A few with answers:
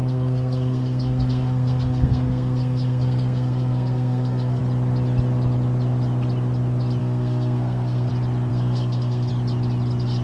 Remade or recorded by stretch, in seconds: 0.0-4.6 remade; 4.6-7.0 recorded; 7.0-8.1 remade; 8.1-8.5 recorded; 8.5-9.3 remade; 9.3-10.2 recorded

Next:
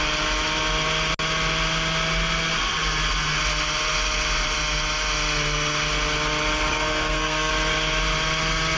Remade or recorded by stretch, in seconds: 0.0-6.7 recorded; 6.7-7.5 remade; 7.5-8.8 recorded